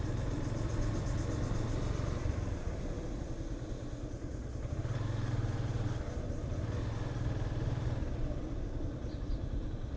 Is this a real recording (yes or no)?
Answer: yes